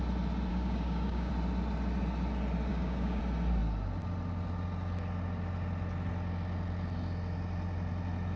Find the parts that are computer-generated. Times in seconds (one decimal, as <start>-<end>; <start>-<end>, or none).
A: 0.5-1.3; 2.7-3.2